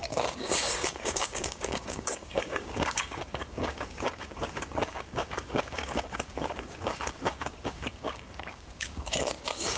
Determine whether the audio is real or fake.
fake